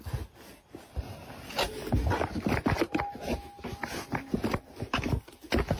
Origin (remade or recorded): recorded